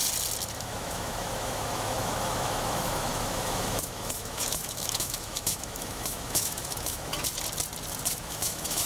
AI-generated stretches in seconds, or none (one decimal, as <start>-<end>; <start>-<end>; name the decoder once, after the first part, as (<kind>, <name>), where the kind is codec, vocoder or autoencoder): 0.6-7.1 (autoencoder, DAC-VAE); 8.1-8.9